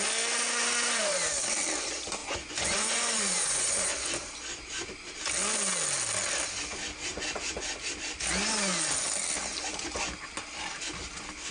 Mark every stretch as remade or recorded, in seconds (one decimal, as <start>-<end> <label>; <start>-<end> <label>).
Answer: 0.0-2.2 recorded; 2.2-3.9 remade; 3.9-11.5 recorded